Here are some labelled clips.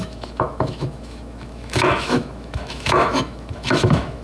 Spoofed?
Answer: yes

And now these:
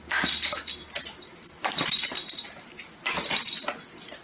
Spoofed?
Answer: no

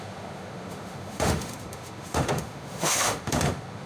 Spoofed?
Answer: yes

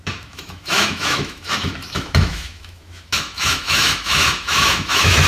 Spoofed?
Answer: yes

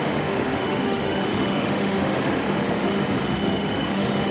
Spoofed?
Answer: yes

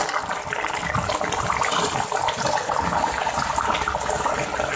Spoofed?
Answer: no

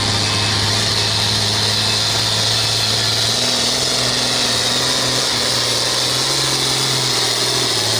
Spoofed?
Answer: no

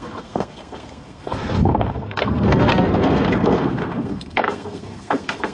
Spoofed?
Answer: yes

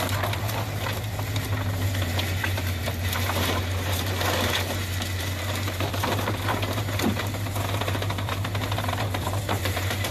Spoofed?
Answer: yes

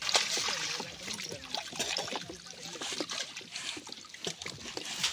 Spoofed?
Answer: no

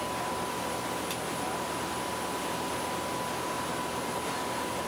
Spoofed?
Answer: no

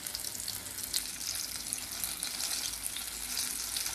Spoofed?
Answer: no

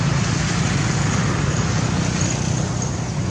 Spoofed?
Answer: no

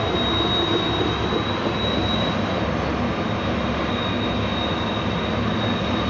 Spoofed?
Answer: no